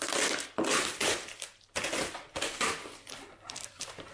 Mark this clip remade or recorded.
remade